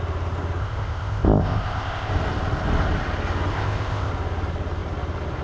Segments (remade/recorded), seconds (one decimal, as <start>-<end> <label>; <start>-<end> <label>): 0.0-0.6 recorded; 0.6-2.1 remade; 2.1-3.5 recorded; 3.5-4.1 remade; 4.1-5.4 recorded